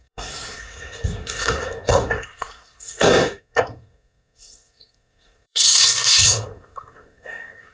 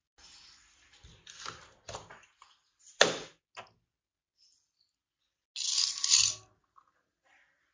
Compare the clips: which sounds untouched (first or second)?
second